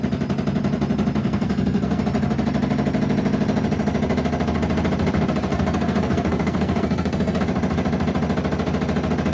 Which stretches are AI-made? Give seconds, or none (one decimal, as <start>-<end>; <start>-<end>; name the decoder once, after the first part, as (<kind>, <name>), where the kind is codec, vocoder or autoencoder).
1.2-2.0 (codec, SNAC); 5.5-7.4